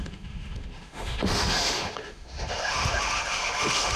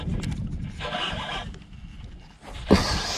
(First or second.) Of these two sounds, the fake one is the first